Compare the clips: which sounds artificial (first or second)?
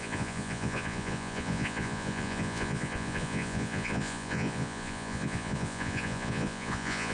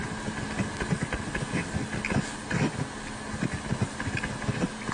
first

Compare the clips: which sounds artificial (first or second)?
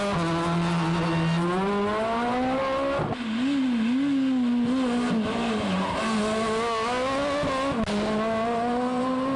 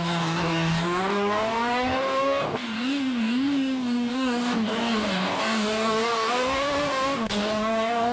second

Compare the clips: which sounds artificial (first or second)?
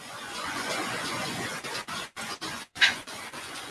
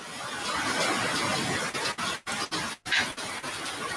first